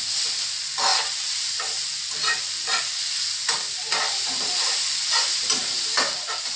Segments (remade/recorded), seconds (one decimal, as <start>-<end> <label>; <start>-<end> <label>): 0.0-6.6 recorded